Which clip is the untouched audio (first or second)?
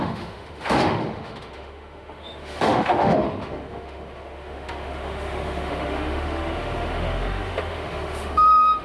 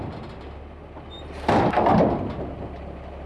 second